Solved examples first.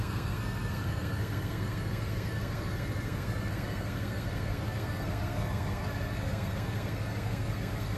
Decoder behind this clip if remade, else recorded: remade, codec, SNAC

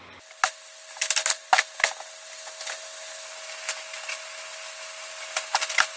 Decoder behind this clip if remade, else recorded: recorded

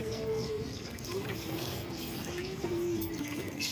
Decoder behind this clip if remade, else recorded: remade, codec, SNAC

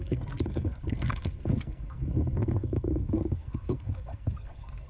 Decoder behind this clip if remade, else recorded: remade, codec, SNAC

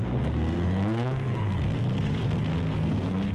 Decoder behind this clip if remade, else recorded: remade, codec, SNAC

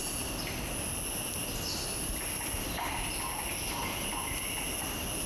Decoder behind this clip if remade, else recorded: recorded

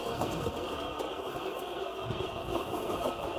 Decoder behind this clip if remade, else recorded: remade, codec, SNAC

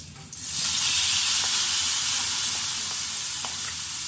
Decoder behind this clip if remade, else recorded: recorded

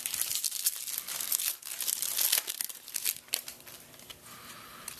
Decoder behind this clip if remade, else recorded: recorded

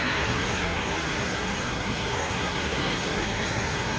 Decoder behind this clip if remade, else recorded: remade, codec, SNAC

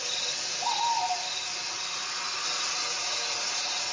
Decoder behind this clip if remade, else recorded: recorded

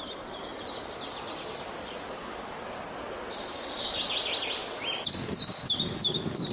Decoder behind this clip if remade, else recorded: recorded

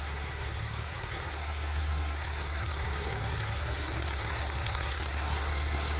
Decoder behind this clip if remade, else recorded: remade, codec, SNAC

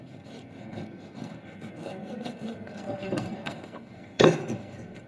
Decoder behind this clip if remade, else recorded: remade, codec, SNAC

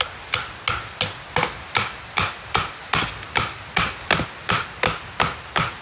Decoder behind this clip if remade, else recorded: recorded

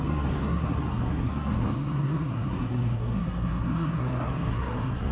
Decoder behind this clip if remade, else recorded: remade, codec, SNAC